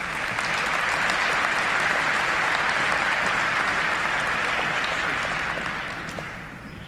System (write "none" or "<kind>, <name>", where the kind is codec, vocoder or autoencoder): none